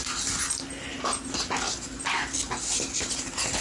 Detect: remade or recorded recorded